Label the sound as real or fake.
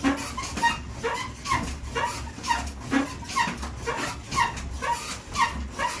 real